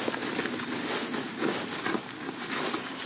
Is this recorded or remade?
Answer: recorded